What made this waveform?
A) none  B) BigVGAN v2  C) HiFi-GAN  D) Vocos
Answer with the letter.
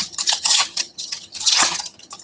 C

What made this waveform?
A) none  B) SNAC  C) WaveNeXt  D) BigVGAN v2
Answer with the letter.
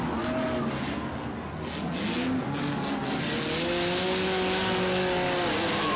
A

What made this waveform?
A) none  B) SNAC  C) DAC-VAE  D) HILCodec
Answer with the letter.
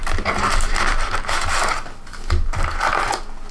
A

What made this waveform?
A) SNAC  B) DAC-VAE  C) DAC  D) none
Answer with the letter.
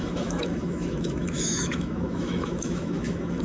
B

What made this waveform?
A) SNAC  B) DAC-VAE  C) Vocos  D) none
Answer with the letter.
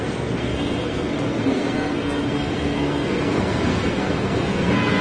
A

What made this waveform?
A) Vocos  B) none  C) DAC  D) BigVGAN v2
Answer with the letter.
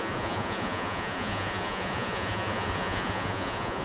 A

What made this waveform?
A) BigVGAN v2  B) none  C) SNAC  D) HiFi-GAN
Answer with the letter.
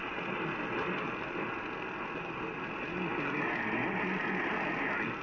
B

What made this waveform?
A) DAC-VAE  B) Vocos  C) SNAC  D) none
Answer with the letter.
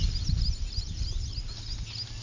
D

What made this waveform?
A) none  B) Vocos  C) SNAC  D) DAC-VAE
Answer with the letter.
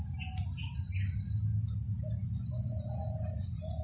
A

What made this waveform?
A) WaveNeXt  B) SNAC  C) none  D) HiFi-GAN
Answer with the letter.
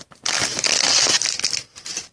C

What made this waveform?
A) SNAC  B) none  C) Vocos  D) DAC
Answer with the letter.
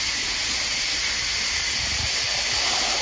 B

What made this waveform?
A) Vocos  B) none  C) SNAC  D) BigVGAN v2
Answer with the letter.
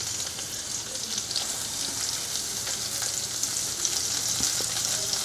B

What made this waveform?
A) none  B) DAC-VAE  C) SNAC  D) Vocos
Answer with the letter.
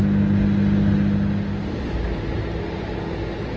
A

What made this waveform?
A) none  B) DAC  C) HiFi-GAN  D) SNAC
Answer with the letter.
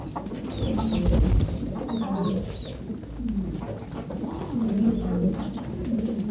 A